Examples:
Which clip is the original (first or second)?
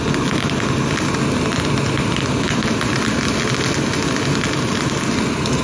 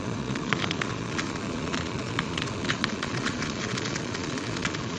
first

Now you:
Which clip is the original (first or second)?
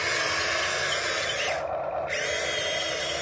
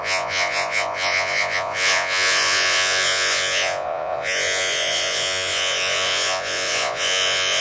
first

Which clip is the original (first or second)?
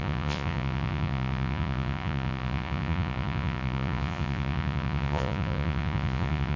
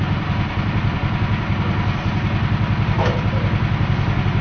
second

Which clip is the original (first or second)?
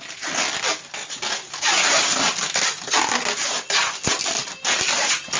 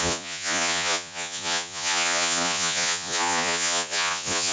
first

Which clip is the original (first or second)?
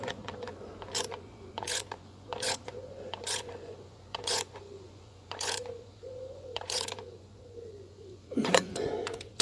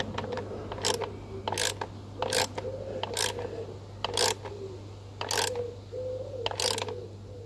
second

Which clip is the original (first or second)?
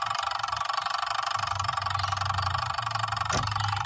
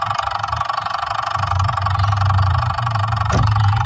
first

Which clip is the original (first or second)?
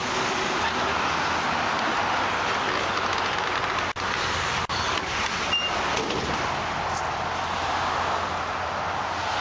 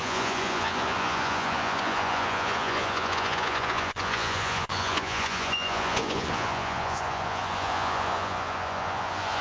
first